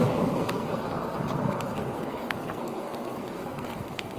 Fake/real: fake